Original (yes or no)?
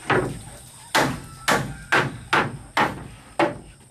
yes